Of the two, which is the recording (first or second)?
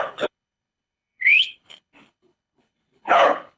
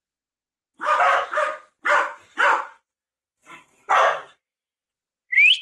second